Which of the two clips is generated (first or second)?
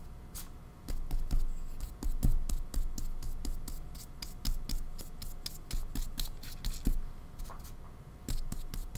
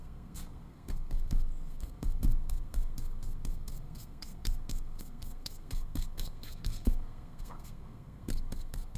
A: second